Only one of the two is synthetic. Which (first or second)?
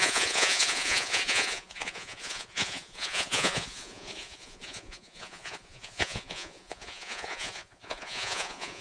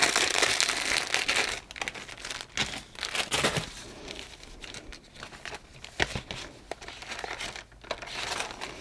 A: first